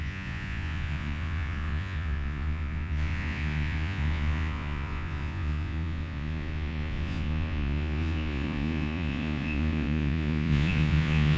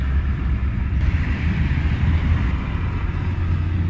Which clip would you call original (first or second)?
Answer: second